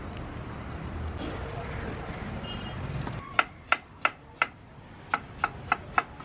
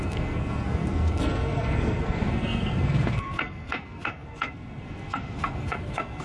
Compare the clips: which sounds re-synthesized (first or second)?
second